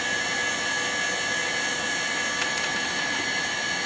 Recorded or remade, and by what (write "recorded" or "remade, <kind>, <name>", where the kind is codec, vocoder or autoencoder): recorded